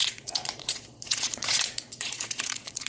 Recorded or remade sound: remade